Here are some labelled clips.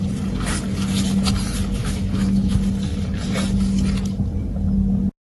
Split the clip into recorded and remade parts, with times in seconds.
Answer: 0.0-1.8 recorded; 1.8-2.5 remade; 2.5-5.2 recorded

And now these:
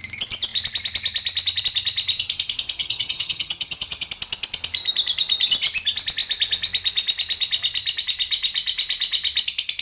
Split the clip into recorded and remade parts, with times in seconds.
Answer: 0.0-2.8 recorded; 2.8-4.1 remade; 4.1-9.8 recorded

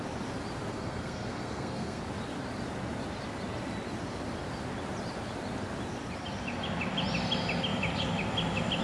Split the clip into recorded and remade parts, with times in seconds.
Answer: 0.0-0.7 recorded; 0.7-2.0 remade; 2.0-8.8 recorded

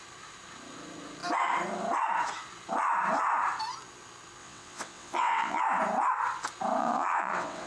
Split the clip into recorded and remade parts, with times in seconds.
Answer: 0.0-4.4 recorded; 4.4-5.6 remade; 5.6-6.8 recorded; 6.8-7.7 remade

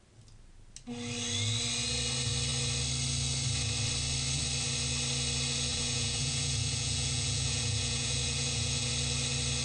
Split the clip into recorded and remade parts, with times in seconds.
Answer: 0.0-5.7 recorded; 5.7-8.9 remade; 8.9-9.6 recorded

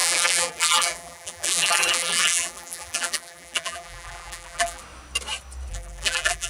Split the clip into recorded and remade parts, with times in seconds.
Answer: 0.0-4.8 remade; 4.8-5.7 recorded; 5.7-6.5 remade